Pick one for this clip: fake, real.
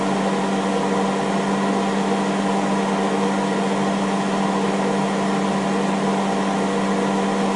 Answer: real